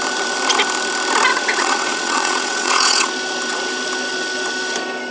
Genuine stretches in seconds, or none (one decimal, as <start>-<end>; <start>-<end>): 0.0-1.3; 3.1-5.1